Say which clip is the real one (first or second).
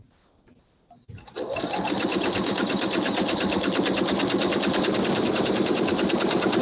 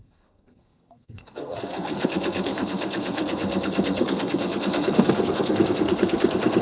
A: first